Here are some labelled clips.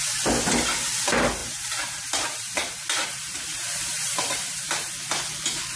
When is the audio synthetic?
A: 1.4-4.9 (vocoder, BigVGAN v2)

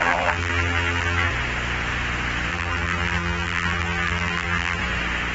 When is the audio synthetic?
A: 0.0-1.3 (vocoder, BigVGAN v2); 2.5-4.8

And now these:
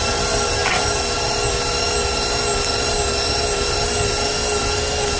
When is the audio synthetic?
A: none